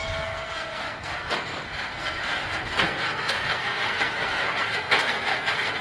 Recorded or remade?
remade